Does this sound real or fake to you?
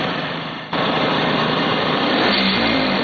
fake